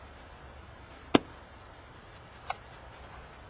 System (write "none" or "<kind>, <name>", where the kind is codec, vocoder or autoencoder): none